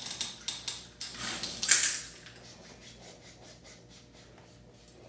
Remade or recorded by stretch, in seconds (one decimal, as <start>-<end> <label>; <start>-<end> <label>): 0.0-1.2 recorded; 1.2-1.7 remade; 1.7-5.1 recorded